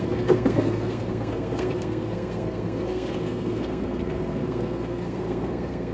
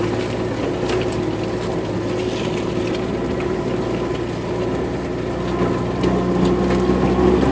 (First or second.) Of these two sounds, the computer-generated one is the first